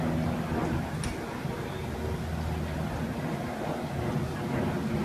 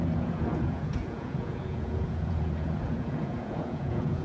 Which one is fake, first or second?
second